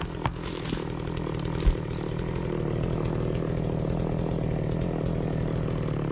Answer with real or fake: real